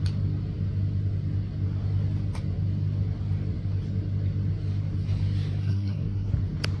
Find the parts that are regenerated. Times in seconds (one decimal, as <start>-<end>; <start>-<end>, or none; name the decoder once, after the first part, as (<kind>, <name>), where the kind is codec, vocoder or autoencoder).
5.6-6.3 (codec, SNAC)